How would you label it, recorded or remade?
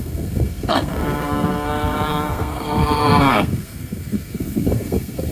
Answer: remade